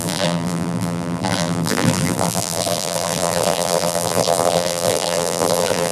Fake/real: fake